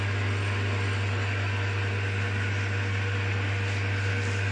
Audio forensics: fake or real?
real